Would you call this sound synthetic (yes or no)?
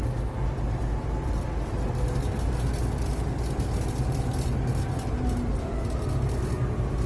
no